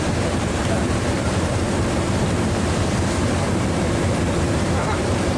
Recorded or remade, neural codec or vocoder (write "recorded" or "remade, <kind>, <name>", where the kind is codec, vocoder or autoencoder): remade, vocoder, BigVGAN v2